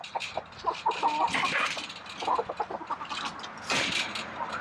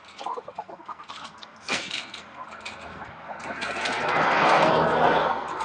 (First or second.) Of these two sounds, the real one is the first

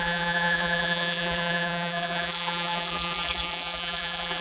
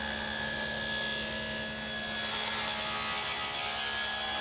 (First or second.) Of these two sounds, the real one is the second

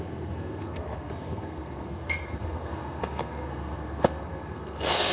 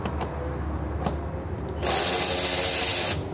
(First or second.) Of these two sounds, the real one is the second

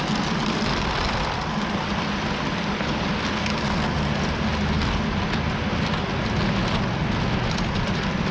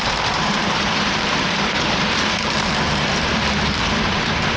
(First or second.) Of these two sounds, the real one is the first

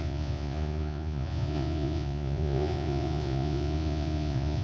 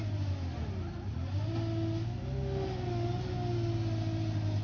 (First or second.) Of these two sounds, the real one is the second